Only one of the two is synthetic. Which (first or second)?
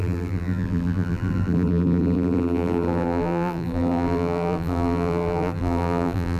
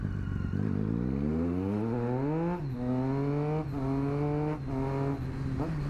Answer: first